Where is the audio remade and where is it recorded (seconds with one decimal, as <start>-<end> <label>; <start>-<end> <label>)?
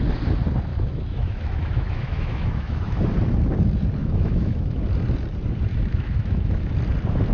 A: 0.0-0.7 recorded; 0.7-3.2 remade; 3.2-4.0 recorded; 4.0-4.8 remade; 4.8-5.7 recorded; 5.7-6.7 remade; 6.7-7.3 recorded